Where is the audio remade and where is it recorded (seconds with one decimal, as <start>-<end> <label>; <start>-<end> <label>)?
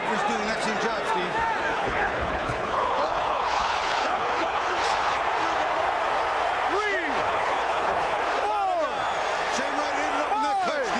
0.0-1.7 recorded; 1.7-5.2 remade; 5.2-7.2 recorded; 7.2-8.2 remade; 8.2-11.0 recorded